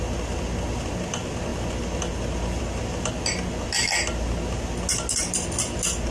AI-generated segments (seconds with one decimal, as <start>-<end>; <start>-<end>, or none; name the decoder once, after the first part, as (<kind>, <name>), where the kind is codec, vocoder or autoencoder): none